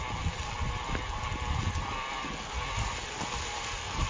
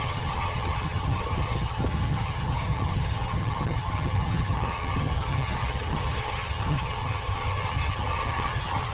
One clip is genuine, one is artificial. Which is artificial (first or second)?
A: second